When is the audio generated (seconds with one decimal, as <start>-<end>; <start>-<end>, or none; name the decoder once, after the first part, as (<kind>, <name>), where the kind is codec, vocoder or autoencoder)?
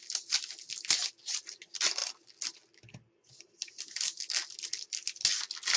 none